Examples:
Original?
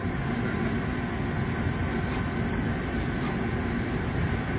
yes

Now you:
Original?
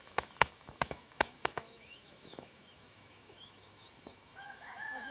no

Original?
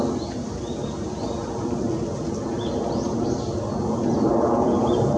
yes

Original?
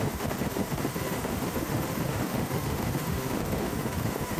no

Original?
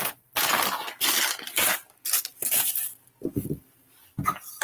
yes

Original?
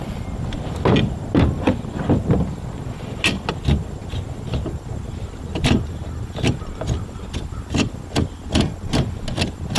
yes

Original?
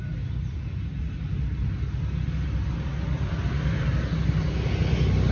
yes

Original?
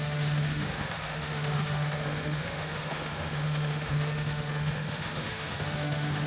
no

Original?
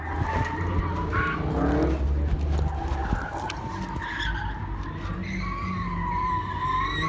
yes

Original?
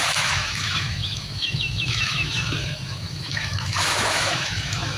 no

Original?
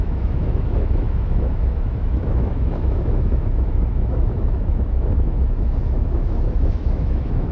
no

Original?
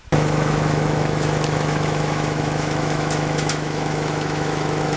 no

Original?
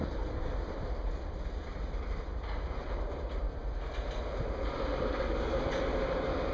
yes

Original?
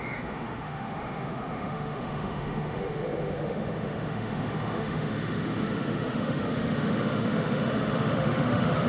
no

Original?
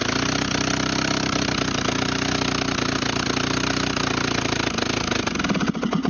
yes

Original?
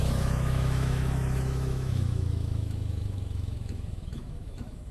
no